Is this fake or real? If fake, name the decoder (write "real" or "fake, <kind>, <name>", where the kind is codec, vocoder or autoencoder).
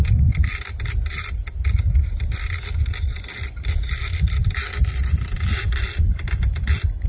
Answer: real